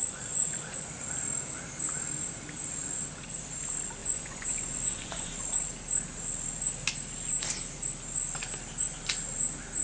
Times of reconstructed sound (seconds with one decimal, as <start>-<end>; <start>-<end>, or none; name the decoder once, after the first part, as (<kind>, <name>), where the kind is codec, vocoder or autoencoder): 0.0-0.9 (vocoder, Vocos); 4.0-5.4